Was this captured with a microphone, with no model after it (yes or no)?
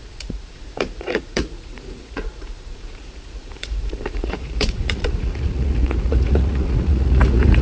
no